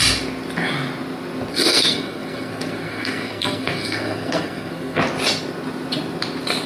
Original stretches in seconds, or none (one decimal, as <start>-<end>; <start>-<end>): 0.0-1.5; 5.0-6.7